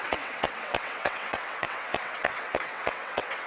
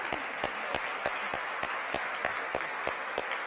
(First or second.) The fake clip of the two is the first